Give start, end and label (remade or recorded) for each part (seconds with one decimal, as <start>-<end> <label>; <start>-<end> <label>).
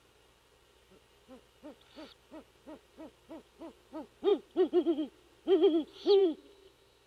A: 0.0-6.2 recorded; 6.2-7.1 remade